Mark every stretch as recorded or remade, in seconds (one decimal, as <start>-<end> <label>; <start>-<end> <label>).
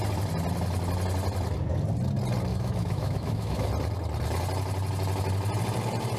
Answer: 0.0-2.5 recorded; 2.5-3.7 remade; 3.7-6.2 recorded